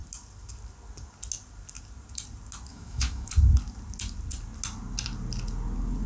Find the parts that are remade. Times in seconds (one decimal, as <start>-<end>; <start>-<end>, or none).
2.7-3.3